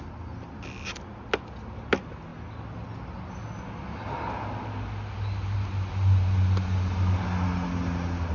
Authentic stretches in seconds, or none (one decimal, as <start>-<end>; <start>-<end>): 0.0-8.3